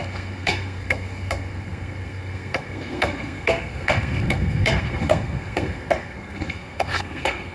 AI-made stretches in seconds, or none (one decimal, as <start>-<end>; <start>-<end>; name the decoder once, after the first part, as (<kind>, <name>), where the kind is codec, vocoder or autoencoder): 0.0-7.5 (codec, SNAC)